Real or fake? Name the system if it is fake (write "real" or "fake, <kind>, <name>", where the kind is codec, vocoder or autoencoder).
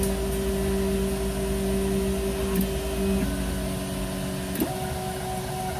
real